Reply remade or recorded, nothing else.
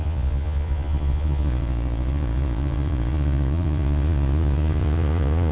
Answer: remade